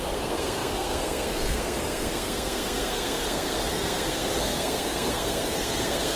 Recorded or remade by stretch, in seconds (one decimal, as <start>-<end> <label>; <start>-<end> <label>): 0.0-6.2 remade